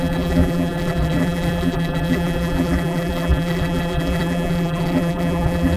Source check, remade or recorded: remade